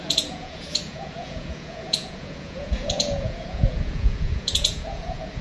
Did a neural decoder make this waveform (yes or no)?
yes